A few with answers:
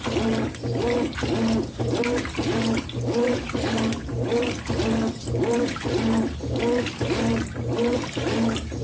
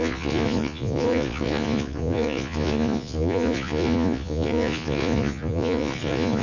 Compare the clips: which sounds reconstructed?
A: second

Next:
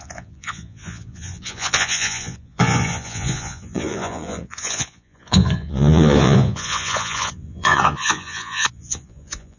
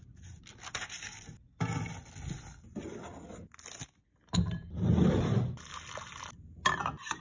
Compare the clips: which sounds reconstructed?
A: first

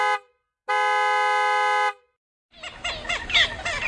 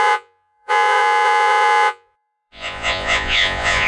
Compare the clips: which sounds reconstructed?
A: second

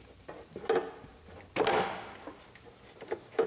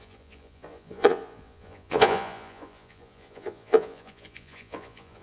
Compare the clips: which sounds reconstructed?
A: second